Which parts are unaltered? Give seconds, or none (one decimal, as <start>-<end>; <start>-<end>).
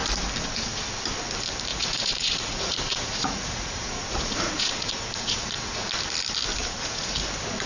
0.0-1.7; 5.9-6.5; 7.1-7.7